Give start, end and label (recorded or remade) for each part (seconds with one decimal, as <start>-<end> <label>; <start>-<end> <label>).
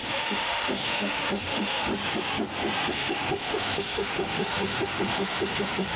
0.0-1.9 remade; 1.9-2.9 recorded; 2.9-6.0 remade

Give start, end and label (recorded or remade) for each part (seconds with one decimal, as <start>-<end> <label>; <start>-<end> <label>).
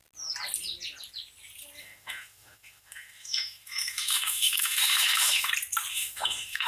0.0-1.8 recorded; 1.8-5.5 remade; 5.5-5.9 recorded; 5.9-6.7 remade